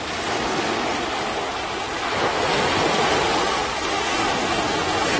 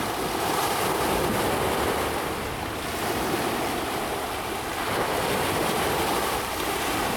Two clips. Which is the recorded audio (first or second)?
first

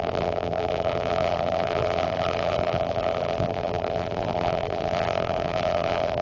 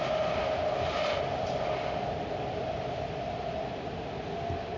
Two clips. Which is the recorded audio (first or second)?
second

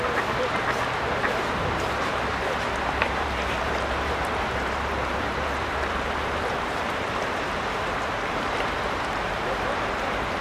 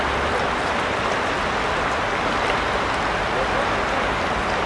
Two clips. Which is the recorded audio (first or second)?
second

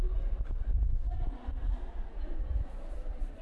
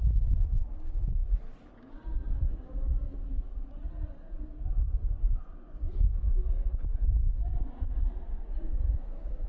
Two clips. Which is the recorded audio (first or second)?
second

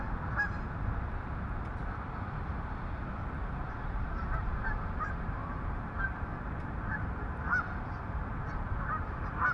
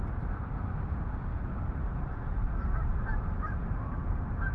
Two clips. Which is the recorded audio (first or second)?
second